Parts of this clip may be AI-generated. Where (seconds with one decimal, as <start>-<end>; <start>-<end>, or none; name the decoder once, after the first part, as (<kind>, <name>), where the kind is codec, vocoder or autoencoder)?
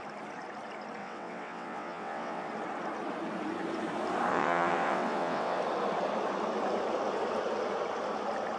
1.0-2.5 (vocoder, WaveNeXt); 4.3-5.6